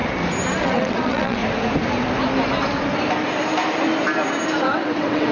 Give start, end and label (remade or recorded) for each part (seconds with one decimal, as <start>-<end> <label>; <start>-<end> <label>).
0.0-0.6 recorded; 0.6-1.4 remade; 1.4-4.6 recorded; 4.6-5.3 remade